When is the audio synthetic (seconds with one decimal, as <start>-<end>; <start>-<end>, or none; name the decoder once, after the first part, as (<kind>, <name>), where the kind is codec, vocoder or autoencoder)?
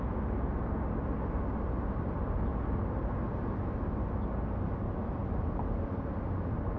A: none